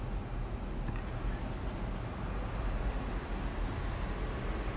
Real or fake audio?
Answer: real